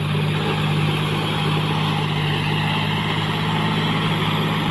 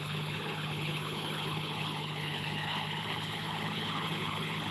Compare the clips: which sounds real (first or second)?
first